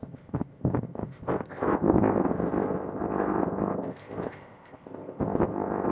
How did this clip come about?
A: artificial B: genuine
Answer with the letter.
A